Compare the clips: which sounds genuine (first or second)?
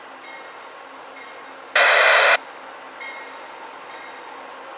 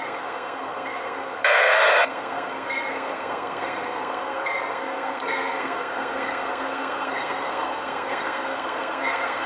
first